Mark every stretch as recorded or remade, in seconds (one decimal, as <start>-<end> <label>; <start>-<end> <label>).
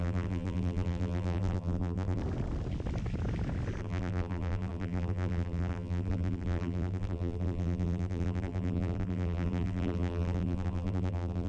0.0-2.2 remade; 2.2-3.8 recorded; 3.8-11.5 remade